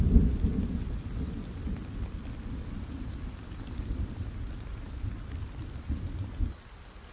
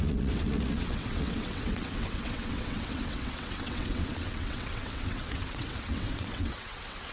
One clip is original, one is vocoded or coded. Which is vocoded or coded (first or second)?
second